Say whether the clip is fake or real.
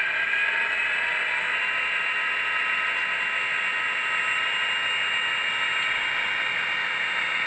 real